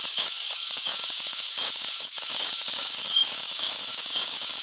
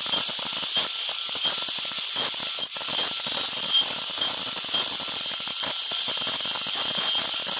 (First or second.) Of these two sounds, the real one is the second